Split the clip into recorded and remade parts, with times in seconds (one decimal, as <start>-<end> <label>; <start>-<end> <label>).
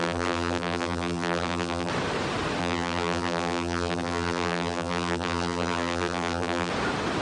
0.0-1.9 remade; 1.9-2.6 recorded; 2.6-6.7 remade; 6.7-7.2 recorded